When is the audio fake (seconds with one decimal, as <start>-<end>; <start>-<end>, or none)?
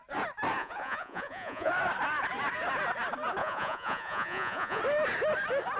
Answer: 0.6-1.7; 3.4-4.8